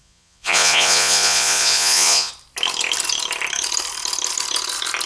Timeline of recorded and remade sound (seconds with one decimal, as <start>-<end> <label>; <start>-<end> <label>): 0.0-2.3 remade; 2.3-5.1 recorded